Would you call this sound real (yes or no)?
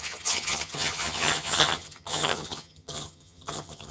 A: no